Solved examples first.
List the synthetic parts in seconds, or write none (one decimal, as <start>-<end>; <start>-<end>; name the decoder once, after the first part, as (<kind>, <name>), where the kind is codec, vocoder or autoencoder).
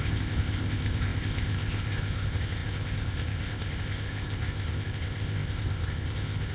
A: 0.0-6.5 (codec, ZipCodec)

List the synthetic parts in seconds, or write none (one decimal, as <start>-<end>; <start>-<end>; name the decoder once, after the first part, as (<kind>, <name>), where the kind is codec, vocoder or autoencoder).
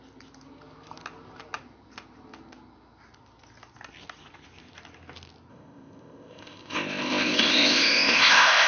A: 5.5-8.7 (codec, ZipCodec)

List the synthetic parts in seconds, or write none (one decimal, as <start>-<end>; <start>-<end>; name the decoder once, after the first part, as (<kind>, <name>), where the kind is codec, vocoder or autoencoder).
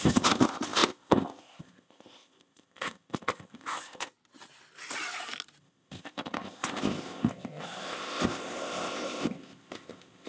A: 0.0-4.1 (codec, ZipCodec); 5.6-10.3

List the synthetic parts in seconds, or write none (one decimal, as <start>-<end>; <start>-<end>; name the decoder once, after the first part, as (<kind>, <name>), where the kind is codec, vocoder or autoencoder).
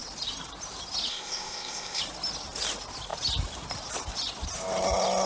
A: 1.1-2.0 (codec, ZipCodec)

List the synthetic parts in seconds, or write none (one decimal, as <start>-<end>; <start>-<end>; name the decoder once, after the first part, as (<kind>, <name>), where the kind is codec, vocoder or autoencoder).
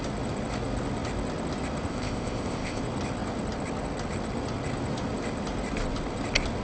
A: 1.9-2.8 (codec, ZipCodec)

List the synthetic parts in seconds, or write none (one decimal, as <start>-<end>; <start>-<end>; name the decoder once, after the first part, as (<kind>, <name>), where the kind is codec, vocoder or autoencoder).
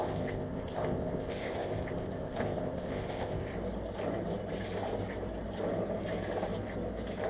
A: 0.0-3.5 (codec, ZipCodec)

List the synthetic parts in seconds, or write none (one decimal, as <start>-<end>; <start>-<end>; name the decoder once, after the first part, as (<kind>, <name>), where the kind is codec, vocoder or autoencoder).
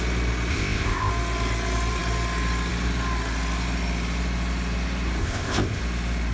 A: 0.5-1.1 (codec, ZipCodec); 5.2-5.8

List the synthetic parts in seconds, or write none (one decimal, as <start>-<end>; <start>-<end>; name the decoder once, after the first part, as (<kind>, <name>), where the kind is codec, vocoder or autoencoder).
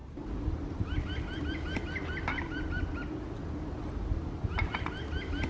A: none